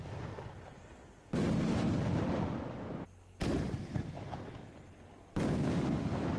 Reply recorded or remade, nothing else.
recorded